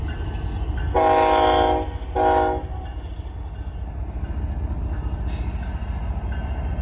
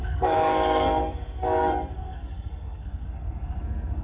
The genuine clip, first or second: first